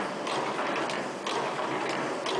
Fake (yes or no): no